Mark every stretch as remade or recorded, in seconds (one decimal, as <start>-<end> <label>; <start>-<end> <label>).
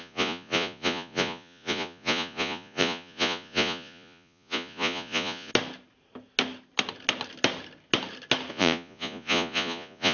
0.0-5.5 remade; 5.5-8.5 recorded; 8.5-10.1 remade